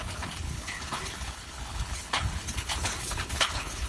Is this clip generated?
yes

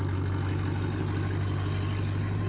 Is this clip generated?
no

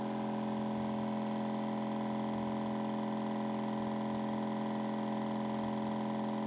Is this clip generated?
no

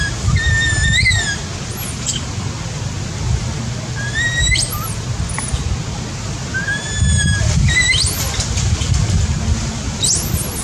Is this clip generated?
no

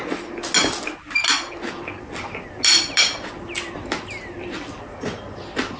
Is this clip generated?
no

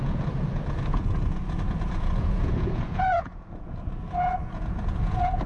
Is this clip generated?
yes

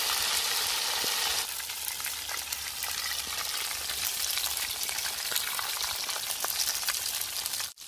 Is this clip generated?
no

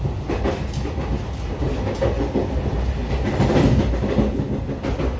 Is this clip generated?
no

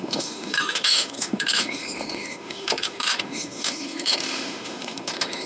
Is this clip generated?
yes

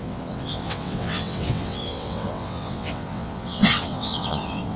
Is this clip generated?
yes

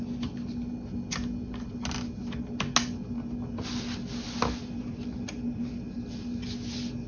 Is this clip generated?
no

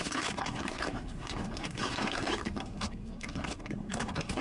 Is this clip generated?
yes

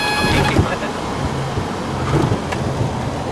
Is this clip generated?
no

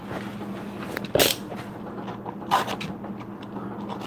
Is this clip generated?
no